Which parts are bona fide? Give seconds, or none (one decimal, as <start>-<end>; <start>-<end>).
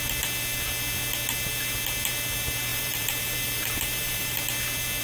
0.0-2.7; 4.4-5.0